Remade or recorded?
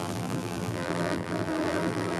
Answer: remade